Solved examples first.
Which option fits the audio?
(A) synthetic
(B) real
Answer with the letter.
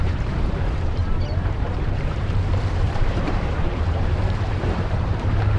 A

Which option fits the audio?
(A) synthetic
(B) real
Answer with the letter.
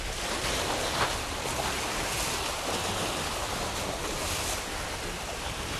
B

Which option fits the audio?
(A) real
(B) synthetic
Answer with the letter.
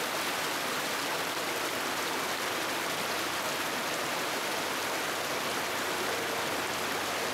A